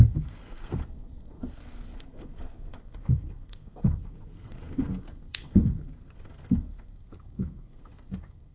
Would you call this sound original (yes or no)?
no